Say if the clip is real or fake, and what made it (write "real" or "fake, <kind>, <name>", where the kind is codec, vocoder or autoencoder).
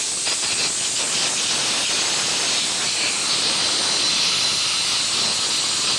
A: real